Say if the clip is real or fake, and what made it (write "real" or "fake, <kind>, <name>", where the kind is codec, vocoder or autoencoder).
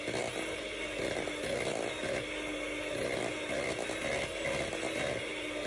real